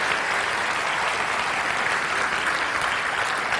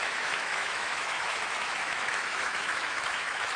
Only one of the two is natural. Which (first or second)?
first